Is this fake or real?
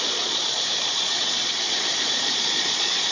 fake